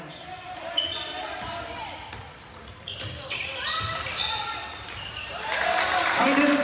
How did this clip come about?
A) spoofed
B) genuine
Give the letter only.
B